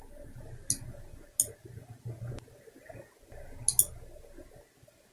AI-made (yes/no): no